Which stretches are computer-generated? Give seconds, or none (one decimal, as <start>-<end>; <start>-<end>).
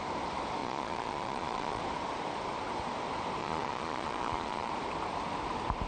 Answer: 0.6-1.8; 3.4-4.7